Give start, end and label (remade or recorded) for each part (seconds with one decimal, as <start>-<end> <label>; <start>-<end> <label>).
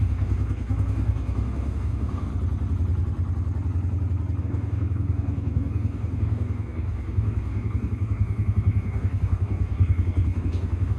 0.0-2.3 remade; 2.3-4.4 recorded; 4.4-11.0 remade